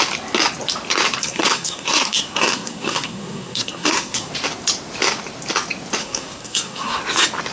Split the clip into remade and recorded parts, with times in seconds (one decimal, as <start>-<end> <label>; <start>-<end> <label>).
0.0-1.2 recorded; 1.2-4.3 remade; 4.3-6.0 recorded; 6.0-7.0 remade; 7.0-7.5 recorded